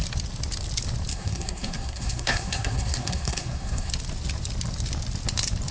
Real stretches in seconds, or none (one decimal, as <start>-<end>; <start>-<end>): 0.0-1.1; 3.9-5.7